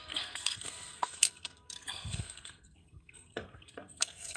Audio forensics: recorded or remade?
remade